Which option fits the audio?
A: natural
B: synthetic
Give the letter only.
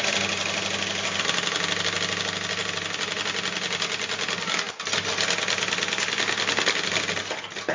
A